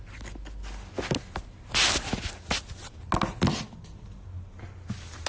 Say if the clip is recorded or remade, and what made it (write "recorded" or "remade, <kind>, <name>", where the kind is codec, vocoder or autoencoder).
recorded